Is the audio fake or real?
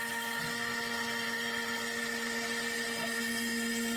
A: real